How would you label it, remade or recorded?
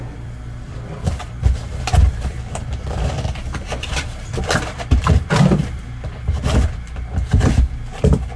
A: remade